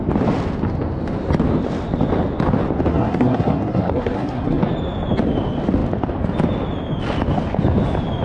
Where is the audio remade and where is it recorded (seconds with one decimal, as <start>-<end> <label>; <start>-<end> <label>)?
0.0-2.9 recorded; 2.9-4.6 remade; 4.6-8.2 recorded